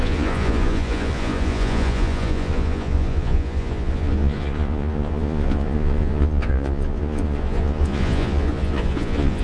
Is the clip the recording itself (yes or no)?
no